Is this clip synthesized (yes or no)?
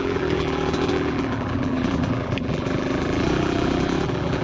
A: yes